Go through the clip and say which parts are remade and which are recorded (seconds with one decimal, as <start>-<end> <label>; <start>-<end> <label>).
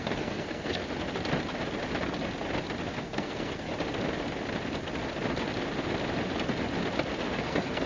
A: 0.0-0.8 remade; 0.8-2.9 recorded; 2.9-3.7 remade; 3.7-7.3 recorded; 7.3-7.9 remade